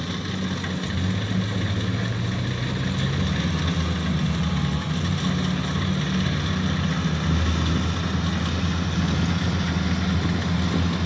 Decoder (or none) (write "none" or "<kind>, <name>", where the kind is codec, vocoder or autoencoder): none